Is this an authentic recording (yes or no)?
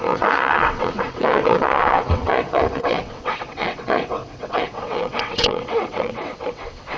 no